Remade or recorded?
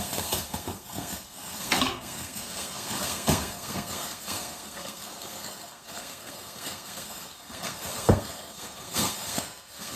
remade